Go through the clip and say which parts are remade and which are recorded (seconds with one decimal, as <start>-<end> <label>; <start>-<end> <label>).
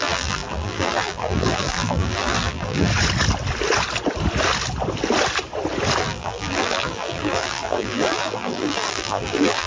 0.0-2.9 remade; 2.9-6.0 recorded; 6.0-9.7 remade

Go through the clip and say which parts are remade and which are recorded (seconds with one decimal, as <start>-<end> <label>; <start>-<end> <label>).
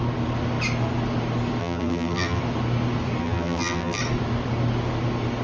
0.0-1.6 recorded; 1.6-2.4 remade; 2.4-3.2 recorded; 3.2-4.0 remade; 4.0-5.4 recorded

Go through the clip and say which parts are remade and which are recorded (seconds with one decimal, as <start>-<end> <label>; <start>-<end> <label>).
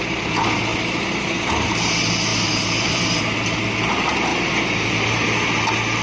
0.0-2.3 recorded; 2.3-3.2 remade; 3.2-6.0 recorded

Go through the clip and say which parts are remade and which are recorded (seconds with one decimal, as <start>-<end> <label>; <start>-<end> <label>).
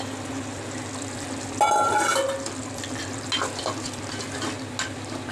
0.0-5.3 recorded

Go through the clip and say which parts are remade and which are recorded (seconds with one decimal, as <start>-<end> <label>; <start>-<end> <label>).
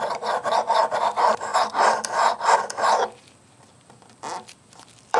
0.0-5.2 remade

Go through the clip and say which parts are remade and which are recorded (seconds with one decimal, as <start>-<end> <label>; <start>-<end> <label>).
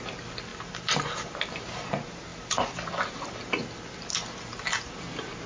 0.0-2.3 recorded; 2.3-4.1 remade; 4.1-4.5 recorded; 4.5-5.1 remade; 5.1-5.5 recorded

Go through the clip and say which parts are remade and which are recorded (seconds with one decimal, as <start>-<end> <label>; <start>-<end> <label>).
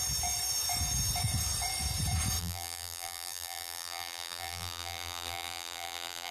0.0-2.4 recorded; 2.4-6.3 remade